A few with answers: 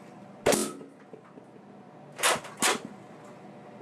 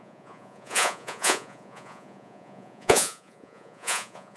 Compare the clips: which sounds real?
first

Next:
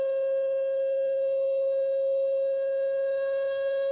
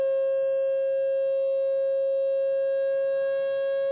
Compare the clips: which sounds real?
second